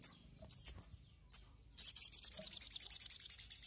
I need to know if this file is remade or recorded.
recorded